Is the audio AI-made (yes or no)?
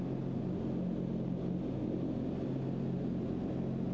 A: no